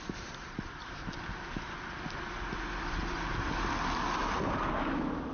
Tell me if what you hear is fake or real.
real